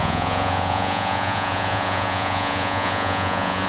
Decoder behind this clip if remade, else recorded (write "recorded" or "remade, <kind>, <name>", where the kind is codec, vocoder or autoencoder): remade, vocoder, Vocos